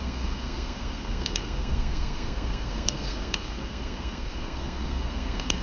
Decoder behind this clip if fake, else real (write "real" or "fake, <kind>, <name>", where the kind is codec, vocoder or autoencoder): fake, codec, SNAC